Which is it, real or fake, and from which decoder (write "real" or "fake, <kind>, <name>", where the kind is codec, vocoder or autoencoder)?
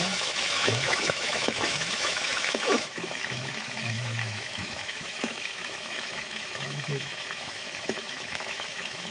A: fake, autoencoder, DAC-VAE